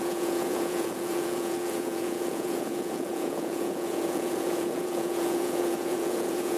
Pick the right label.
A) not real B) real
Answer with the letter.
A